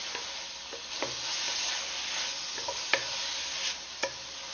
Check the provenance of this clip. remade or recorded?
recorded